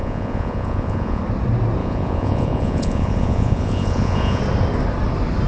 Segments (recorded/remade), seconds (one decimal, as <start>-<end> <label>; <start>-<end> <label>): 0.0-1.2 remade; 1.2-1.8 recorded; 1.8-4.4 remade; 4.4-5.5 recorded